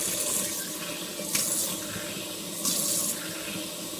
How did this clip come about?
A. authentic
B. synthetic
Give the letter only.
A